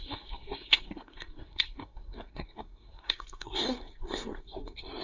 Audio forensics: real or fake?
fake